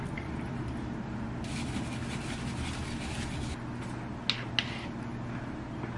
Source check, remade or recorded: recorded